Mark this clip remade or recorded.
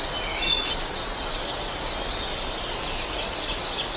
recorded